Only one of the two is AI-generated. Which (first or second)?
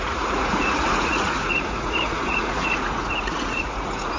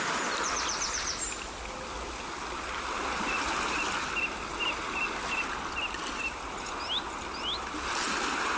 first